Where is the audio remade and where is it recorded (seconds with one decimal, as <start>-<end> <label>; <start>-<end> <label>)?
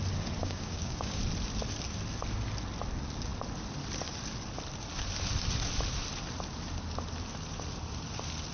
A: 0.0-0.4 recorded; 0.4-1.2 remade; 1.2-8.5 recorded